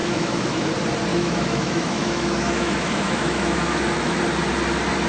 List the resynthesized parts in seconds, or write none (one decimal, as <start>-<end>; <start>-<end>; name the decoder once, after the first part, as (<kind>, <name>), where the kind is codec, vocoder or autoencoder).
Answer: 0.0-0.7 (autoencoder, DAC-VAE); 1.1-4.2